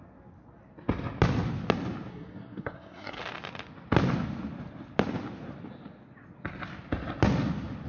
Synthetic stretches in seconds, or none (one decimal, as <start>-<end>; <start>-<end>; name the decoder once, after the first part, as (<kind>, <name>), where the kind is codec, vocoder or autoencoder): 2.1-3.2 (codec, SNAC)